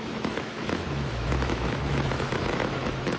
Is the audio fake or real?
fake